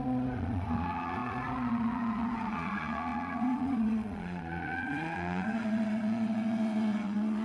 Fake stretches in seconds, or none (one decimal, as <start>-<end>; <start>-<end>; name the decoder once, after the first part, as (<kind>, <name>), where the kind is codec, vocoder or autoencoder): 0.0-7.4 (vocoder, Vocos)